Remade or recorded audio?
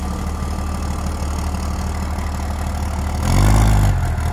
recorded